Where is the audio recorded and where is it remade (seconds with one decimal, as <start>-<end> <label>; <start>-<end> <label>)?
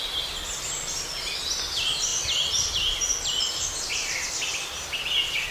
0.0-2.1 recorded; 2.1-4.3 remade; 4.3-5.5 recorded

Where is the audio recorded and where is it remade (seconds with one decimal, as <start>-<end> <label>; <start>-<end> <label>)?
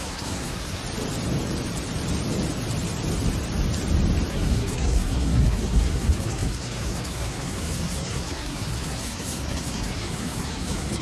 0.0-0.8 remade; 0.8-4.3 recorded; 4.3-11.0 remade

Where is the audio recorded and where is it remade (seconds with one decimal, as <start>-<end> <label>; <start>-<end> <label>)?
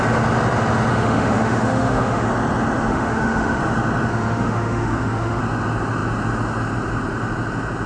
0.0-0.9 recorded; 0.9-2.3 remade; 2.3-2.9 recorded; 2.9-3.6 remade; 3.6-4.1 recorded; 4.1-5.4 remade; 5.4-7.9 recorded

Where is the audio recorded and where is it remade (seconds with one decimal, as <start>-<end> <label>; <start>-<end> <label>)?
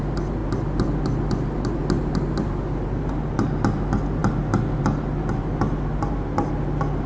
0.0-7.1 recorded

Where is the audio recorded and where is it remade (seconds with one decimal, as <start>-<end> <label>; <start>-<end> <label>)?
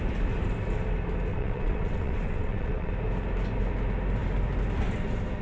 0.0-1.3 recorded; 1.3-2.9 remade; 2.9-5.4 recorded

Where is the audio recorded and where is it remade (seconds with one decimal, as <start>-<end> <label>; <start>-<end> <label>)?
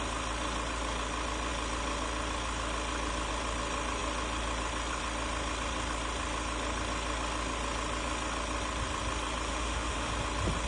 0.0-9.5 recorded; 9.5-10.1 remade; 10.1-10.7 recorded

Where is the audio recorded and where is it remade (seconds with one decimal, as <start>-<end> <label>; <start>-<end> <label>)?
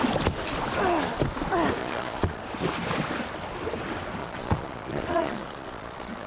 0.0-1.8 recorded; 1.8-2.4 remade; 2.4-4.2 recorded; 4.2-6.3 remade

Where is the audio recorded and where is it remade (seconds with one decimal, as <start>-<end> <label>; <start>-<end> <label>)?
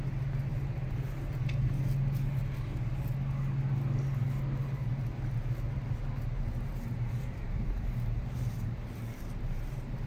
0.0-0.5 recorded; 0.5-1.8 remade; 1.8-6.7 recorded; 6.7-10.1 remade